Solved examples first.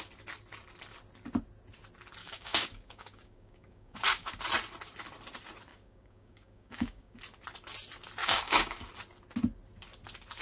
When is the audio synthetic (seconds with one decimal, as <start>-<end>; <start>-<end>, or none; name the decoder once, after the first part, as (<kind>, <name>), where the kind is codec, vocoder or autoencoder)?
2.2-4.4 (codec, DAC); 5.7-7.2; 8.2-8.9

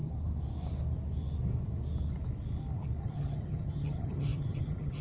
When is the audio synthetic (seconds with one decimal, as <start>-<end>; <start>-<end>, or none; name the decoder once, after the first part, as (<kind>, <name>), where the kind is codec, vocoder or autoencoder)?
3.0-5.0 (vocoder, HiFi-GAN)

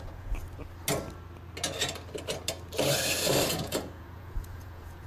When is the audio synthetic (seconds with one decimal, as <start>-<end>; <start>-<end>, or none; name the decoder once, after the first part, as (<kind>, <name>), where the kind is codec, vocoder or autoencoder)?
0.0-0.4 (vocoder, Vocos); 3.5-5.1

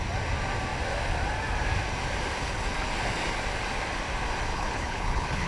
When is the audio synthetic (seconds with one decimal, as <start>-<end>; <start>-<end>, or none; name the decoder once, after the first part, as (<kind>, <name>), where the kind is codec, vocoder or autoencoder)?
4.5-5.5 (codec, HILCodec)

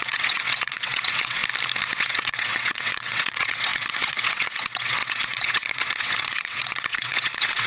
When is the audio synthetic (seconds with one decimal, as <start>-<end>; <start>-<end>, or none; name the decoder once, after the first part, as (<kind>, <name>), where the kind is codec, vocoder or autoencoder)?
0.0-1.4 (vocoder, WaveNeXt); 2.0-7.7

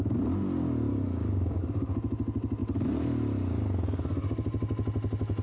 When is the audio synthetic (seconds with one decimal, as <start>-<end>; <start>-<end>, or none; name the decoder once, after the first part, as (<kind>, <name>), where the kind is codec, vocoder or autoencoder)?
0.9-1.6 (codec, DAC)